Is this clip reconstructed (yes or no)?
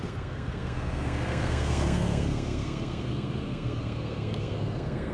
yes